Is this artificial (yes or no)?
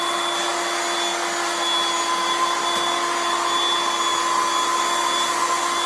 no